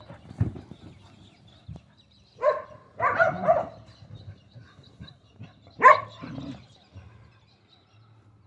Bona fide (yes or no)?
yes